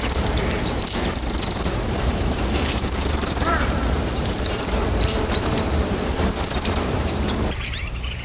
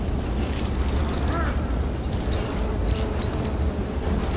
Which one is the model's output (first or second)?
first